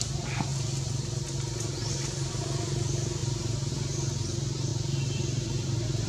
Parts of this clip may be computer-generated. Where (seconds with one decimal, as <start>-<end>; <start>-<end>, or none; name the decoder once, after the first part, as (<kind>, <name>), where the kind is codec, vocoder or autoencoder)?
none